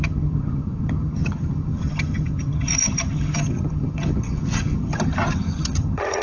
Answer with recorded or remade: remade